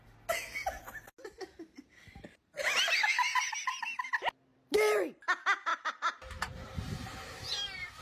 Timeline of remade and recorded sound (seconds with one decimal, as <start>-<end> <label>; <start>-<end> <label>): 0.0-4.5 recorded; 4.5-5.2 remade; 5.2-5.7 recorded; 5.7-8.0 remade